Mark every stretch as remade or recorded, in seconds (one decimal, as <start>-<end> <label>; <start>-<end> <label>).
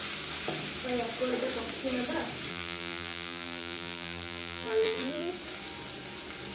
0.0-2.5 recorded; 2.5-5.3 remade; 5.3-6.5 recorded